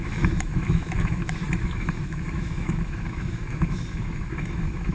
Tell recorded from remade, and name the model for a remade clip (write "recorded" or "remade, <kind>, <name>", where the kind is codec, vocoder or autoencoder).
remade, autoencoder, DAC-VAE